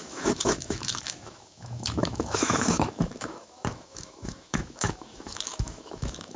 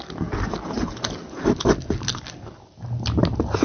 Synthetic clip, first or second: first